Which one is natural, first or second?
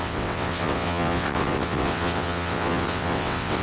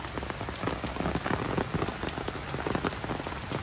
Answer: second